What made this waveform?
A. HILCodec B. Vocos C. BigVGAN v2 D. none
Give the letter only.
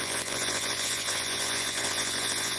B